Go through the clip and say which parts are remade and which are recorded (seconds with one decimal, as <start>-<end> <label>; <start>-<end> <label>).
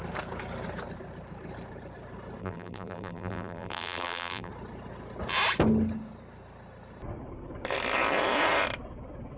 0.0-2.4 recorded; 2.4-4.5 remade; 4.5-9.4 recorded